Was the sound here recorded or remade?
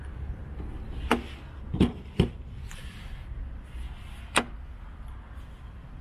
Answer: recorded